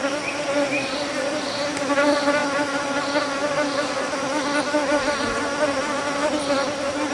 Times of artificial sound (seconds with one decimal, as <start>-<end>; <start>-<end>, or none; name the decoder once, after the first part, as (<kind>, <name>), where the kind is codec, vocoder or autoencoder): none

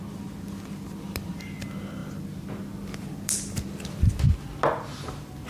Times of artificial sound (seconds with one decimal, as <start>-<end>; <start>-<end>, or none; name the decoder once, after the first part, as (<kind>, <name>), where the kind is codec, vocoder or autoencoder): none

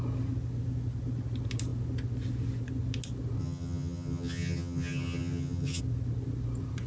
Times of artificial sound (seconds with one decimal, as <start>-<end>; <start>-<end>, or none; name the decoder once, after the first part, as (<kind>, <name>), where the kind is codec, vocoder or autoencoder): 3.4-5.8 (vocoder, HiFi-GAN)